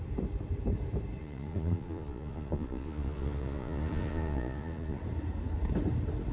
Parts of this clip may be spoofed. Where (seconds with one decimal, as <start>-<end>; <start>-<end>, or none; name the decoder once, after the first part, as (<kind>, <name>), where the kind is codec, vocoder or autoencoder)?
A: 1.2-5.0 (vocoder, Vocos)